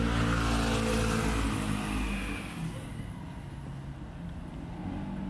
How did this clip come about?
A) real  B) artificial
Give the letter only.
A